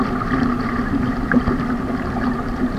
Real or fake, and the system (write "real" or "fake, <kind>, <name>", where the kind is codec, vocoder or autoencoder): fake, vocoder, BigVGAN v2